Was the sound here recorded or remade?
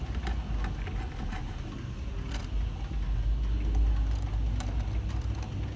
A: recorded